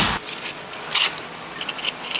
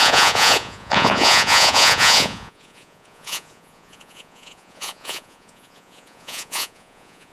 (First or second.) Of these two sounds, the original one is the first